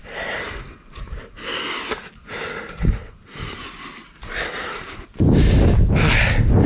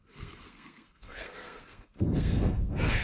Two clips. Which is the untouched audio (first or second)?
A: first